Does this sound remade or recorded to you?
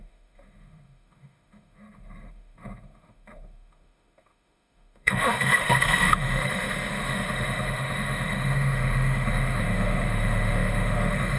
remade